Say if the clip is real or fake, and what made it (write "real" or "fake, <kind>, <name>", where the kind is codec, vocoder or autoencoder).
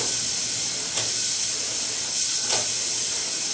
real